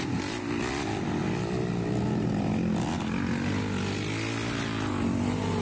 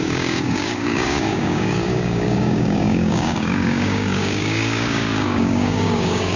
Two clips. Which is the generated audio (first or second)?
second